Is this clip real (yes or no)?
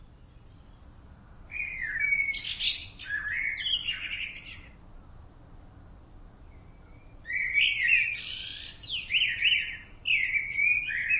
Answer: yes